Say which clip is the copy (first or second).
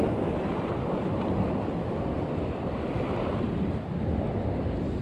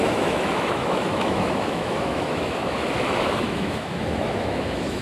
second